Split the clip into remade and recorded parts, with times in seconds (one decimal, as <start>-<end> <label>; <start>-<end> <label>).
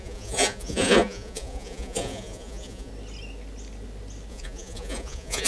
0.0-2.9 remade; 2.9-4.3 recorded; 4.3-5.5 remade